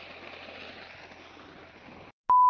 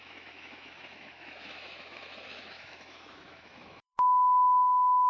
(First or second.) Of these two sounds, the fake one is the second